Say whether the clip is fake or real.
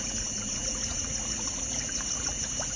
fake